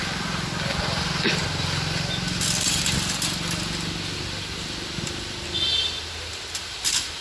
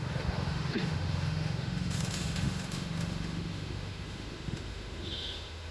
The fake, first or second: second